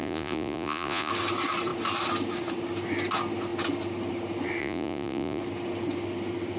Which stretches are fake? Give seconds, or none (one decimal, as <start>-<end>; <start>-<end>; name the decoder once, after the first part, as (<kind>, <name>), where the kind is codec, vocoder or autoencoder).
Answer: 0.0-1.1 (vocoder, Vocos); 4.6-5.4